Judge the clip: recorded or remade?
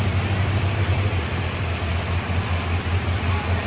remade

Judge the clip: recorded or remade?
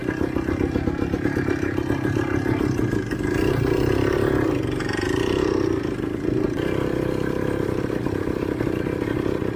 recorded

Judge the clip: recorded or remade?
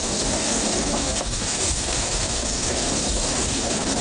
remade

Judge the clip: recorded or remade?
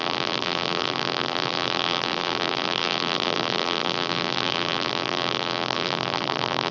remade